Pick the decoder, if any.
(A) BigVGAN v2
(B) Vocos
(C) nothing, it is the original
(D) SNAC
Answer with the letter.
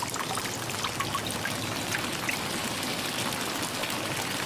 C